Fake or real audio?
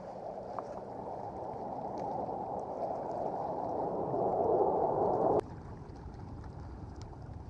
fake